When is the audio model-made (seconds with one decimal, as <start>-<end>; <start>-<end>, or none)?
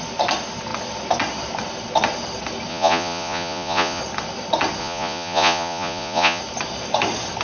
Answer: 2.7-4.0; 4.8-6.4